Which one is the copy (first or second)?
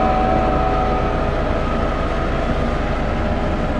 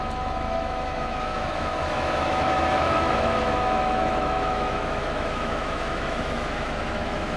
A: second